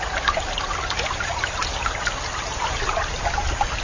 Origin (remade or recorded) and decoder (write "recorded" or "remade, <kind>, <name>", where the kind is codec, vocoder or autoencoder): recorded